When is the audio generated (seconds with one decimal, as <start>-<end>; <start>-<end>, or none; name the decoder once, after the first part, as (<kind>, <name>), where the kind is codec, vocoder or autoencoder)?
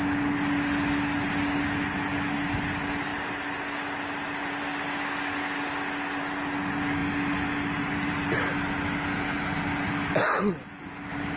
none